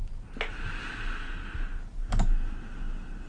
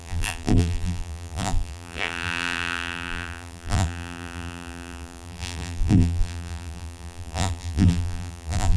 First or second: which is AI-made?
second